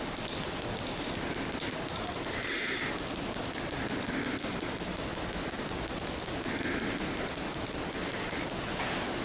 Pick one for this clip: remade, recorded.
recorded